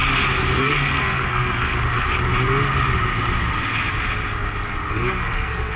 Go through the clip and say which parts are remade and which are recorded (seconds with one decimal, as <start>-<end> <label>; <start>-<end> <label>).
0.0-0.6 recorded; 0.6-1.7 remade; 1.7-4.9 recorded; 4.9-5.8 remade